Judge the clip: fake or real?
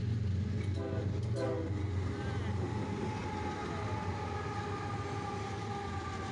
real